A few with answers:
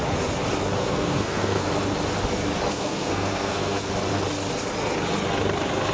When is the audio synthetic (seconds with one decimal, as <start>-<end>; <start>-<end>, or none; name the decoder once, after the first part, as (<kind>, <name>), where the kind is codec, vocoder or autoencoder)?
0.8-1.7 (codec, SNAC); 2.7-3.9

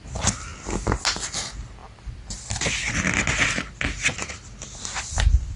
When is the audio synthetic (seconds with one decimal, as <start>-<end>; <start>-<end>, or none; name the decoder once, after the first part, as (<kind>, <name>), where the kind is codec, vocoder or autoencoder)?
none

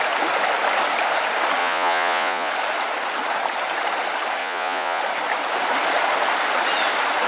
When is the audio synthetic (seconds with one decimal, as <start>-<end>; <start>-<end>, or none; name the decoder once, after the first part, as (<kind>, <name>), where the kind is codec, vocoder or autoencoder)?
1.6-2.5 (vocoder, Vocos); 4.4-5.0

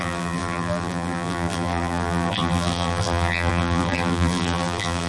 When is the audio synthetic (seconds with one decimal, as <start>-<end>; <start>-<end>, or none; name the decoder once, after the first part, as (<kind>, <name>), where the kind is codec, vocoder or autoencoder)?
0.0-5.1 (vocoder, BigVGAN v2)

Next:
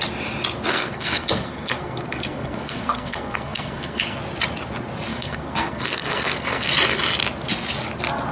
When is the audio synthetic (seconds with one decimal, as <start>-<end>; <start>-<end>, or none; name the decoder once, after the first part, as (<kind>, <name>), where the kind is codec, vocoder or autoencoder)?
0.7-4.2 (codec, SNAC); 5.1-6.7

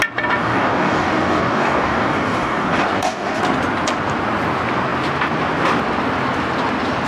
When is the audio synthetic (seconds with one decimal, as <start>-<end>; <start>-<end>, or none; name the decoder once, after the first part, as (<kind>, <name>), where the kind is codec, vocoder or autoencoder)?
0.4-3.4 (codec, DAC)

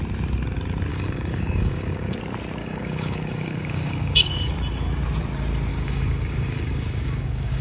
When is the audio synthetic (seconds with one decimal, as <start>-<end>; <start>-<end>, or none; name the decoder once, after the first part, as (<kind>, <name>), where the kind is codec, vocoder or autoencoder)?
0.9-2.2 (codec, DAC); 2.6-4.5; 5.7-7.6

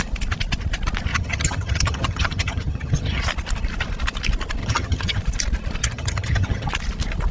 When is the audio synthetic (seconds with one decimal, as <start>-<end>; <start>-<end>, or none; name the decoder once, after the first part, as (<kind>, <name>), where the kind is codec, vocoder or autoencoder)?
1.1-3.2 (vocoder, HiFi-GAN); 4.6-5.2; 5.8-6.7